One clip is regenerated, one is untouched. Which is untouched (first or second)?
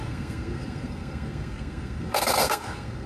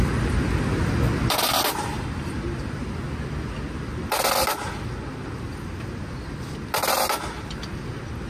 second